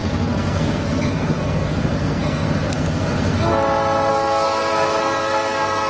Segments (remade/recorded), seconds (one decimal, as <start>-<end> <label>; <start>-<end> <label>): 0.0-3.5 remade; 3.5-4.1 recorded; 4.1-5.9 remade